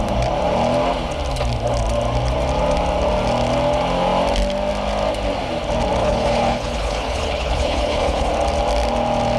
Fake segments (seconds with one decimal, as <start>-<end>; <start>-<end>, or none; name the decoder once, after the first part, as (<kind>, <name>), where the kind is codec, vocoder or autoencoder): 6.0-8.3 (codec, HILCodec)